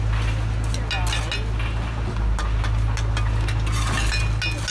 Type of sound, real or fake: real